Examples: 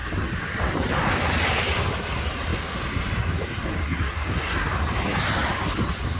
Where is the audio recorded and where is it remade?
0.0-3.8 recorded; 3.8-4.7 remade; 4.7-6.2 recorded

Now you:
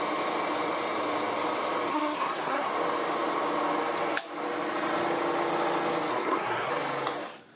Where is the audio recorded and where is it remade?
0.0-1.9 recorded; 1.9-2.7 remade; 2.7-6.1 recorded; 6.1-6.7 remade; 6.7-7.6 recorded

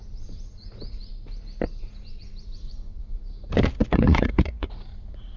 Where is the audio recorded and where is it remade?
0.0-1.1 remade; 1.1-1.8 recorded; 1.8-3.2 remade; 3.2-3.9 recorded; 3.9-5.4 remade

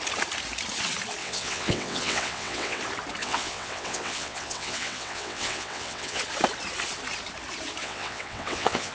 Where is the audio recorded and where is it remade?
0.0-1.2 recorded; 1.2-2.8 remade; 2.8-3.2 recorded; 3.2-6.2 remade; 6.2-7.8 recorded; 7.8-8.9 remade

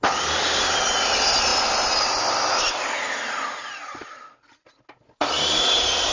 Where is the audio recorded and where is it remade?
0.0-6.1 recorded